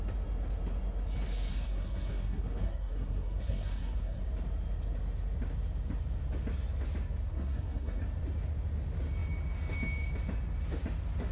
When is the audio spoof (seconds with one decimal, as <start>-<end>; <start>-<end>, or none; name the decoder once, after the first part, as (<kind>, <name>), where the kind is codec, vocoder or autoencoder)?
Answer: 1.5-4.2 (codec, SNAC); 7.3-8.0